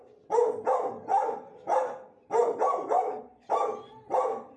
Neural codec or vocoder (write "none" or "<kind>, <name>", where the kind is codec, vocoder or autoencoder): none